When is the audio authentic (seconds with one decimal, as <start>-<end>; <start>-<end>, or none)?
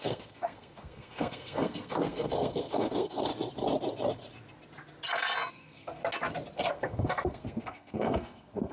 3.3-5.5; 6.0-6.7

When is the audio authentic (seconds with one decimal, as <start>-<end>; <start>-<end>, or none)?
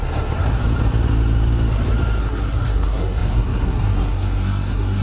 0.6-2.2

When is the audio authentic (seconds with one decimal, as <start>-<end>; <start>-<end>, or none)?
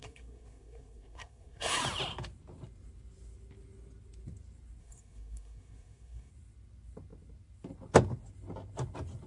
1.8-4.8; 6.3-9.3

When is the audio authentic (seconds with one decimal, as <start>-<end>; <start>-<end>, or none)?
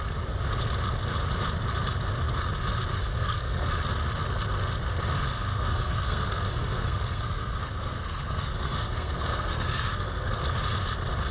0.0-2.9; 3.7-5.5; 10.4-11.3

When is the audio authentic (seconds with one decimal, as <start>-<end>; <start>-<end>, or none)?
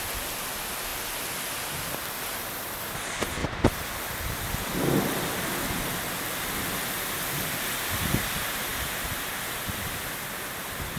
0.0-11.0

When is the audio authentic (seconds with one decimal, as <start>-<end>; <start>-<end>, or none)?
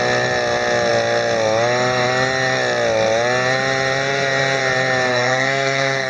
0.0-5.1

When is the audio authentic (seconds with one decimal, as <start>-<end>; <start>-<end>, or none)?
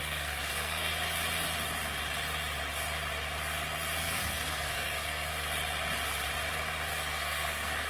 0.9-4.0; 5.3-7.1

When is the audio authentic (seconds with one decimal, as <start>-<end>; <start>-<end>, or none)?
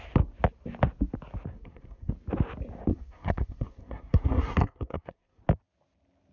0.0-1.5; 2.1-2.9; 5.4-6.3